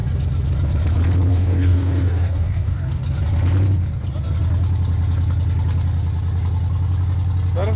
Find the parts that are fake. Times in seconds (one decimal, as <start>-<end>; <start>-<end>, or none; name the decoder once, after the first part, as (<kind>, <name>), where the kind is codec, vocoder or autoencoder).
1.3-3.0 (codec, DAC)